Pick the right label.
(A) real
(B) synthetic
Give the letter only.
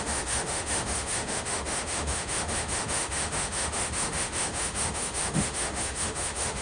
B